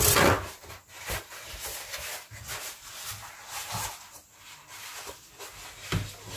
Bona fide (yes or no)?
yes